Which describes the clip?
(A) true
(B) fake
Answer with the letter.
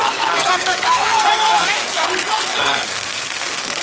B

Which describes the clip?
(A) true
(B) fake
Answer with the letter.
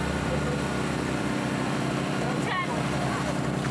B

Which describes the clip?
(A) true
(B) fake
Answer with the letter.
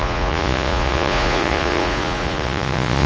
B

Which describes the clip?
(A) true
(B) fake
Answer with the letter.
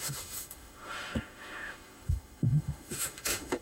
B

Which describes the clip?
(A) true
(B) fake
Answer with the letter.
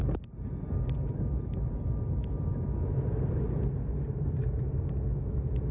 A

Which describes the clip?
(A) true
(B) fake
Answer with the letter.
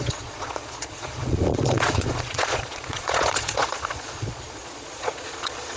B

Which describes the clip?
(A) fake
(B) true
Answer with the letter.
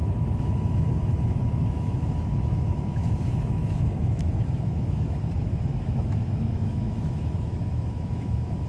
A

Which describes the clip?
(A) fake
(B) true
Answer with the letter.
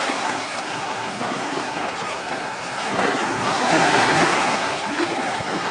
A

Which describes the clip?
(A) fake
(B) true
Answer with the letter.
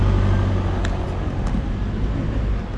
B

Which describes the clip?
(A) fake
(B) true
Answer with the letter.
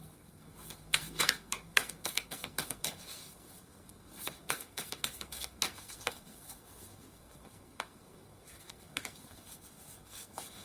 A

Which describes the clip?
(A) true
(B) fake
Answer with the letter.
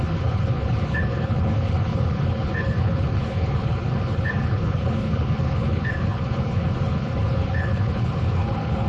B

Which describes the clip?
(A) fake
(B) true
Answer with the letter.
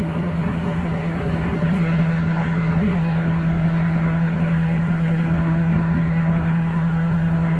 A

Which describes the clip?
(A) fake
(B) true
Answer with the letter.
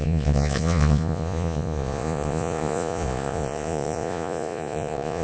A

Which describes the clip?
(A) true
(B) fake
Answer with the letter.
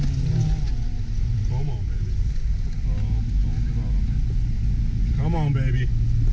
A